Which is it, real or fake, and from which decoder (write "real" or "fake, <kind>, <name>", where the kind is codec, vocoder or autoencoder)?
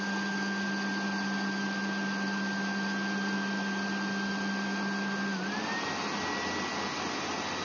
real